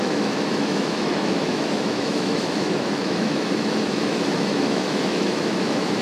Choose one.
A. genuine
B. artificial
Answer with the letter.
B